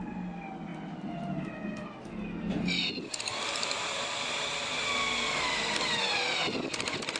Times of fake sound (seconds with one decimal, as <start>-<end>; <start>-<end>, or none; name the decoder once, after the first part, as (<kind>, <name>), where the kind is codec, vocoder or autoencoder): none